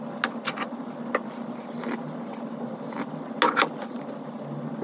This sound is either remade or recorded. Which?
recorded